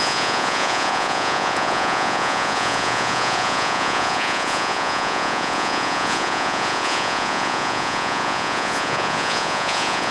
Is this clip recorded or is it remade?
remade